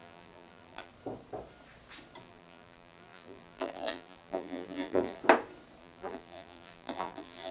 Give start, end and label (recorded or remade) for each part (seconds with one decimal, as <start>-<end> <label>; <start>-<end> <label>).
0.0-0.9 remade; 0.9-2.2 recorded; 2.2-5.2 remade; 5.2-5.8 recorded; 5.8-7.5 remade